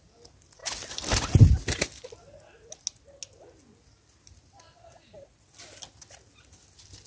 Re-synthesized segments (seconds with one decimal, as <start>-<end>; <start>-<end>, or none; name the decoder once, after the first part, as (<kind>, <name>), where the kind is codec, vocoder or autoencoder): none